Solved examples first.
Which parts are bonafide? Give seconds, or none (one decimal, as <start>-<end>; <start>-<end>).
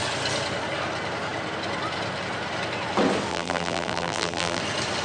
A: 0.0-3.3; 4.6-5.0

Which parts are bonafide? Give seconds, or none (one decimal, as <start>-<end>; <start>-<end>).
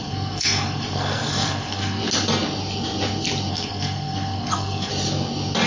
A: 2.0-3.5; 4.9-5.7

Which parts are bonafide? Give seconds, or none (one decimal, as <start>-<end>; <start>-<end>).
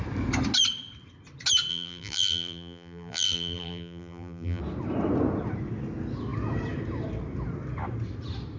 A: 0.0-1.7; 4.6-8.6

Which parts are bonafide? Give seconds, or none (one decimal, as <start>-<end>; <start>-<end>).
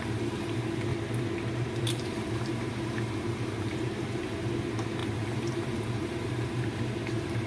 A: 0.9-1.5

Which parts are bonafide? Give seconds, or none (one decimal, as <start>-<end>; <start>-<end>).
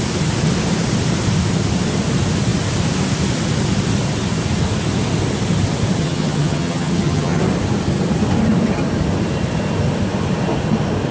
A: 0.0-6.0; 7.4-11.1